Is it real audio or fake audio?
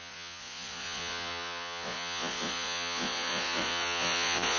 fake